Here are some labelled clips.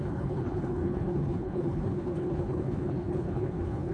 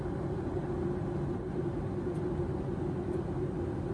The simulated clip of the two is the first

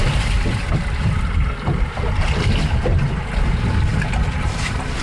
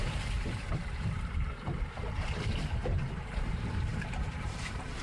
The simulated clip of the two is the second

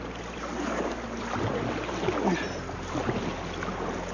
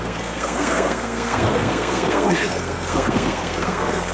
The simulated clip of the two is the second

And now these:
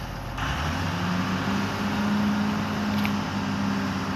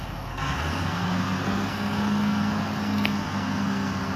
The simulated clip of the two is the second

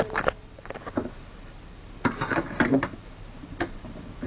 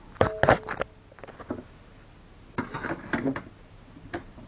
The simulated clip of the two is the first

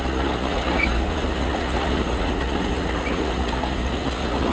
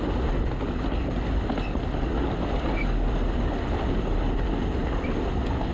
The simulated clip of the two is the first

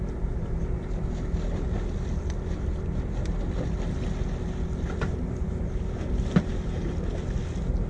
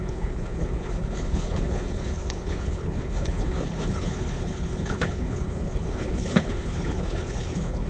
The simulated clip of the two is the second